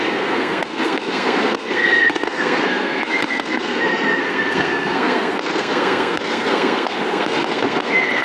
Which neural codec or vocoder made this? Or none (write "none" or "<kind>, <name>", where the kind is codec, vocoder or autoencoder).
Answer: codec, SNAC